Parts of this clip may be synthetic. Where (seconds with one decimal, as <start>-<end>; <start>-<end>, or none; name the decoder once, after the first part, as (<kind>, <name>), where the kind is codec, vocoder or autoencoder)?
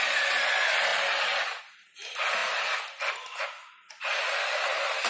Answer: none